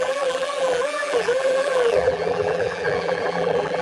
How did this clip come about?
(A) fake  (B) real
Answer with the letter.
A